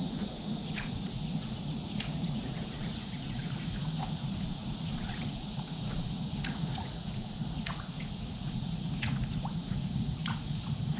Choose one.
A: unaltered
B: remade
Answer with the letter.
B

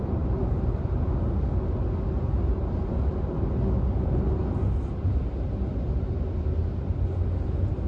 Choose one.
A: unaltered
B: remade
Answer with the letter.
A